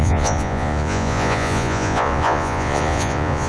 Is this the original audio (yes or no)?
no